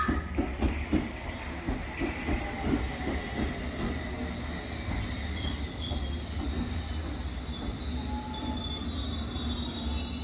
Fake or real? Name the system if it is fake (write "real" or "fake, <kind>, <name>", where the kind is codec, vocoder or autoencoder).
real